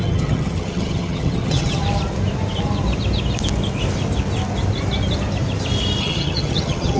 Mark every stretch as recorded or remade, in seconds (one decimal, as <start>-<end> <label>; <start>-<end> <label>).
0.0-1.8 remade; 1.8-6.0 recorded; 6.0-7.0 remade